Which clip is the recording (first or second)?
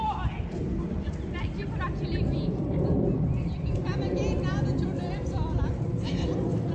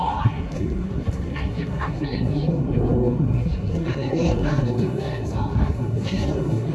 first